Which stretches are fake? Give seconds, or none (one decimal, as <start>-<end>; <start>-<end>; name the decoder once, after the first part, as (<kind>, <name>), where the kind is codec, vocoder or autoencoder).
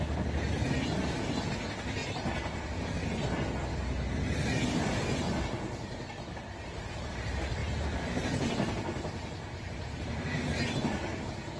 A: none